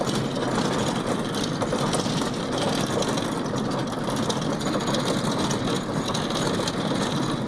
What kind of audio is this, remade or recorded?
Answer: recorded